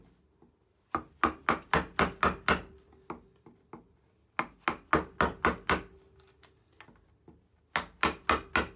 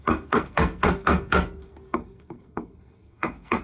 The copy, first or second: second